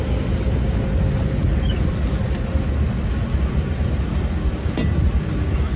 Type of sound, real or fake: real